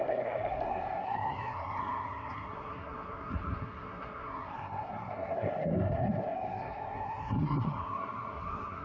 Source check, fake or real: fake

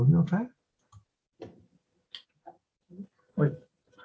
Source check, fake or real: real